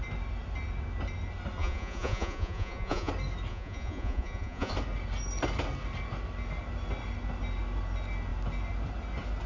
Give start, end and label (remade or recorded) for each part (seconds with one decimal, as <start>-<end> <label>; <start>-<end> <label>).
0.0-1.6 recorded; 1.6-3.1 remade; 3.1-3.5 recorded; 3.5-4.7 remade; 4.7-9.5 recorded